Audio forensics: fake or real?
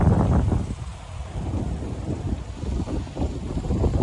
real